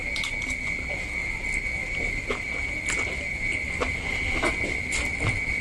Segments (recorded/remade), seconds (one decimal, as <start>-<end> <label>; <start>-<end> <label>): 0.0-1.8 recorded; 1.8-4.5 remade; 4.5-5.6 recorded